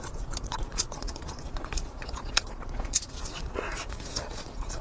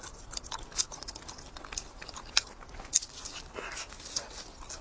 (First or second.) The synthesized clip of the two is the first